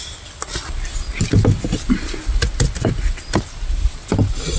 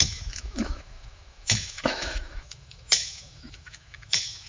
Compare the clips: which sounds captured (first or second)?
first